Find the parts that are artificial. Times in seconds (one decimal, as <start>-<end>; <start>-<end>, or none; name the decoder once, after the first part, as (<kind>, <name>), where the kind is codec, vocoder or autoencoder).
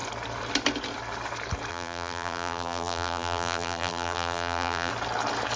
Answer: 1.7-4.9 (vocoder, BigVGAN v2)